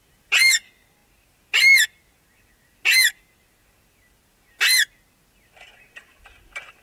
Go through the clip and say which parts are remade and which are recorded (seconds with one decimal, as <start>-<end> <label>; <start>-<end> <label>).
0.0-6.8 recorded